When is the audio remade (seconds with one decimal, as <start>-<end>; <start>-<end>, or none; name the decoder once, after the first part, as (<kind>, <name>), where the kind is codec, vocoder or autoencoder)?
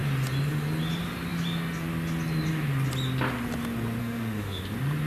4.0-4.6 (autoencoder, DAC-VAE)